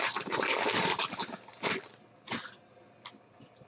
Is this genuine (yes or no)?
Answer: yes